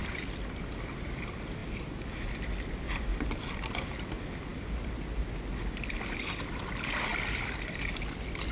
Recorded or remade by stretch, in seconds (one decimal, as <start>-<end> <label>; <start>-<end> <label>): 0.0-8.5 recorded